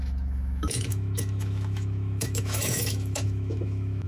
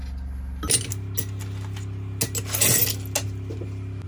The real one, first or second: second